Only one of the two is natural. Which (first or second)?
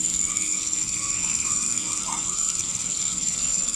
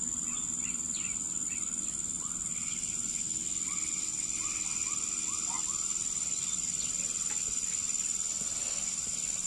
second